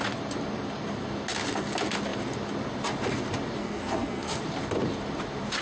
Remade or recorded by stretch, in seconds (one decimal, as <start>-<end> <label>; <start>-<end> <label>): 0.0-3.6 recorded; 3.6-4.4 remade; 4.4-5.6 recorded